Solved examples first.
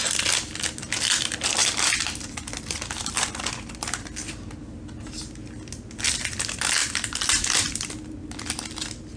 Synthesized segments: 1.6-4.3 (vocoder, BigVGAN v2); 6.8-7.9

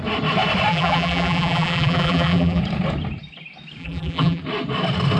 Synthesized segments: 0.7-2.6 (vocoder, BigVGAN v2); 3.8-4.4